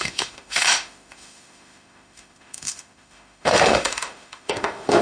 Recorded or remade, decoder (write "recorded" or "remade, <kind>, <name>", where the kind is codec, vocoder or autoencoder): remade, autoencoder, DAC-VAE